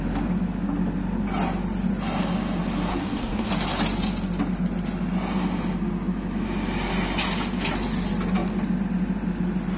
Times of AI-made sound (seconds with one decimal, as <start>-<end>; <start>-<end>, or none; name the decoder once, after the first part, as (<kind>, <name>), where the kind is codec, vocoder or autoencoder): 2.9-3.5 (codec, SNAC)